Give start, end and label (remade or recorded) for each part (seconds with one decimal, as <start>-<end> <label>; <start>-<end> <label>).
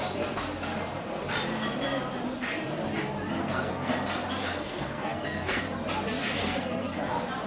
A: 0.0-3.4 recorded; 3.4-3.9 remade; 3.9-4.4 recorded; 4.4-5.6 remade; 5.6-6.4 recorded; 6.4-7.1 remade; 7.1-7.5 recorded